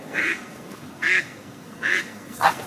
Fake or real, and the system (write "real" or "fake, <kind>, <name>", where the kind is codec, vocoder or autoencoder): fake, codec, SNAC